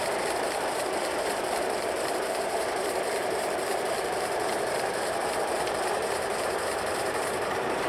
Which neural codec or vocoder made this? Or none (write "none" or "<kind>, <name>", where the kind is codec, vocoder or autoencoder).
vocoder, BigVGAN v2